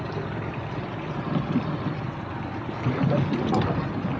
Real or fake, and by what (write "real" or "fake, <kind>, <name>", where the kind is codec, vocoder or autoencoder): real